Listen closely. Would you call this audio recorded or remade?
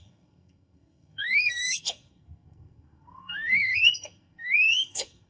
remade